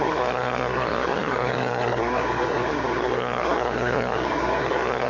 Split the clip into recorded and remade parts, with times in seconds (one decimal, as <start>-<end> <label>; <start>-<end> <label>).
0.0-5.1 remade